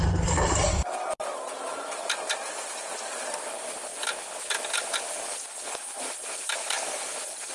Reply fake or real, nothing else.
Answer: real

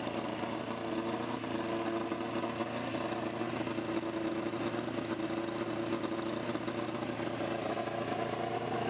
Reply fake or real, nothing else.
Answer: real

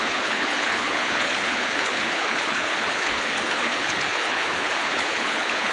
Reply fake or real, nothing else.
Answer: fake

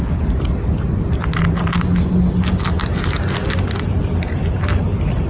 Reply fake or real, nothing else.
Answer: real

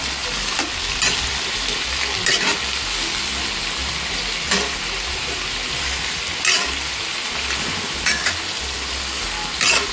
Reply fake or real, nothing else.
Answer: real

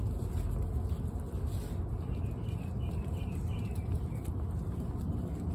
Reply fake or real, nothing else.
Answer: real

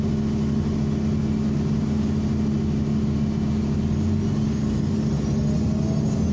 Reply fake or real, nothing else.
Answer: real